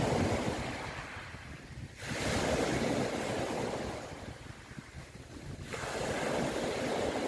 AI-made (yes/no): no